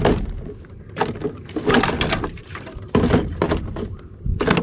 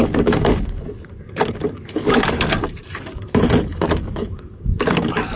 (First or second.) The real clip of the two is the first